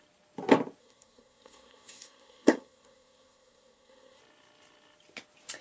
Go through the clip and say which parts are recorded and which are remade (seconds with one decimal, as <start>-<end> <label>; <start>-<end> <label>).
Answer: 0.0-0.8 recorded; 0.8-4.2 remade; 4.2-5.6 recorded